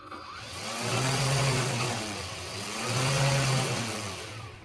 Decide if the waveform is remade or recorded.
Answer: remade